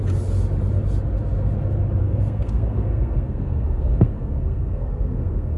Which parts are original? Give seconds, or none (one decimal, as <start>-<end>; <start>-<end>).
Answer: 0.0-2.0